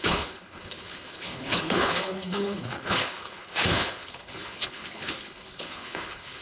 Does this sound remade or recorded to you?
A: remade